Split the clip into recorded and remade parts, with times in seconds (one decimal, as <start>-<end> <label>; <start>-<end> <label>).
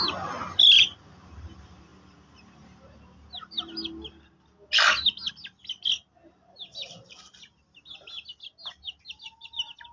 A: 0.0-9.9 recorded